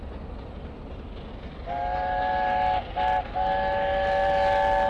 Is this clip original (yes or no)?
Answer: yes